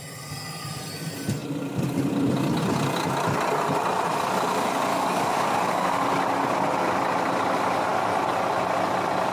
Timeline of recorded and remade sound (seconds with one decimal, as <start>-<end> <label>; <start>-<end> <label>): 0.0-4.9 recorded; 4.9-6.0 remade; 6.0-9.3 recorded